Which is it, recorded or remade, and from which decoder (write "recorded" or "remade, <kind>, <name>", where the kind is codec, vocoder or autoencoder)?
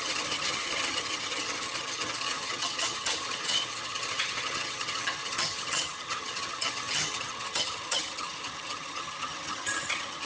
remade, vocoder, HiFi-GAN